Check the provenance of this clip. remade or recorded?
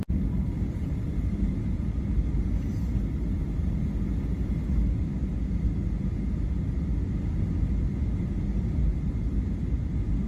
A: recorded